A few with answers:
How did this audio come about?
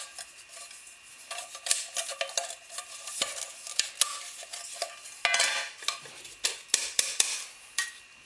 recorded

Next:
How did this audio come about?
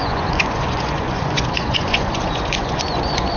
remade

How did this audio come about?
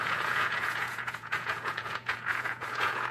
remade